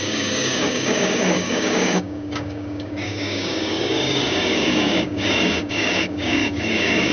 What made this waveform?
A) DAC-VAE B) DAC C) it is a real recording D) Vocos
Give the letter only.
B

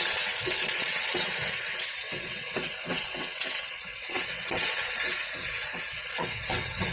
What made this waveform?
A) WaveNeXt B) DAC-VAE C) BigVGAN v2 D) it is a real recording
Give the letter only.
A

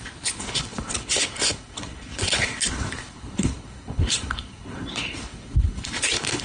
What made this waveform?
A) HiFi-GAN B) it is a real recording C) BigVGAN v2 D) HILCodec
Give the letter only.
D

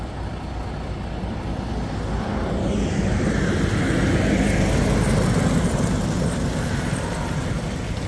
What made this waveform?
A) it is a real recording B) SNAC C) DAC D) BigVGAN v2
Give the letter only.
A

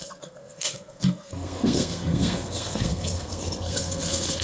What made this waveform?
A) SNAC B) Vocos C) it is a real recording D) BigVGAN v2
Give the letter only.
A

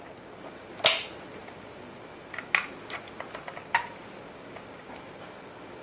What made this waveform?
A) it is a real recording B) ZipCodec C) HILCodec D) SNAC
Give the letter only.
A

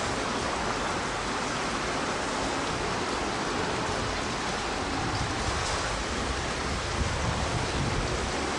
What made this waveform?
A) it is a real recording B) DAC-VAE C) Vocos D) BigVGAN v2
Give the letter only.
A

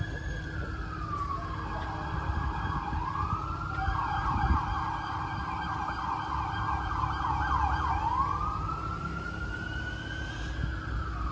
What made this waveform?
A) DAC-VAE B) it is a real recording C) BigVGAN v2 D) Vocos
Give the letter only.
B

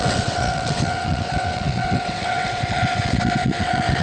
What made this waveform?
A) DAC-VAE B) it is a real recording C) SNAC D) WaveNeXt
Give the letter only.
D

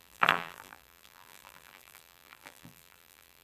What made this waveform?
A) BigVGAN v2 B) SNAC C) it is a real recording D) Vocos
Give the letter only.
A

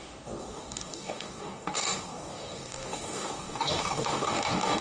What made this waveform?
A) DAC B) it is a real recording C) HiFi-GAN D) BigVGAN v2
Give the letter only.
A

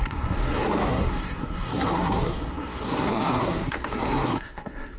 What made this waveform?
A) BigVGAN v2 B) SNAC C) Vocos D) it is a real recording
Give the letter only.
B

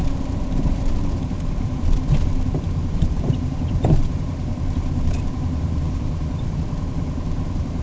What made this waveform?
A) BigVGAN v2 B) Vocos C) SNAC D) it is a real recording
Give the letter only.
A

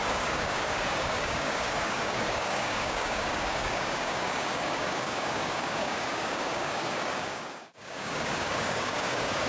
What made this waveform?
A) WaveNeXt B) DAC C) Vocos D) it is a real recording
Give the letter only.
B